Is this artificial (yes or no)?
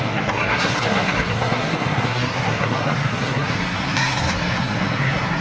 yes